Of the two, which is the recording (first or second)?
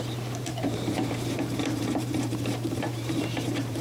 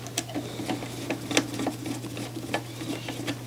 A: second